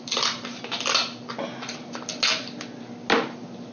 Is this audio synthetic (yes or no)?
no